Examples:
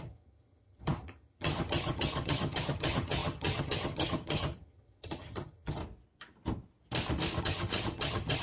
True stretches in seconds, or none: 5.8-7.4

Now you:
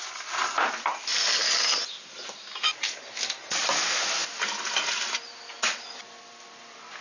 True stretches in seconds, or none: 0.0-7.0

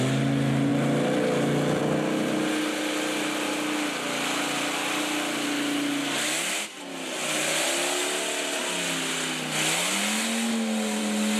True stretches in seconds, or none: 0.0-11.4

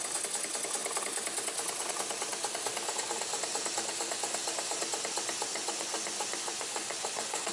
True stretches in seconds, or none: 0.0-5.5